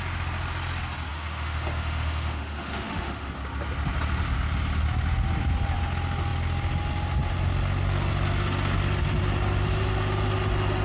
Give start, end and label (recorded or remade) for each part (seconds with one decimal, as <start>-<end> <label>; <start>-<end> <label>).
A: 0.0-1.1 recorded; 1.1-3.3 remade; 3.3-10.8 recorded